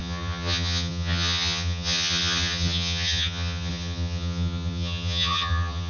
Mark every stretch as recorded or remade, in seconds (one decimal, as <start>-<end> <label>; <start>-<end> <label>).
0.0-5.9 remade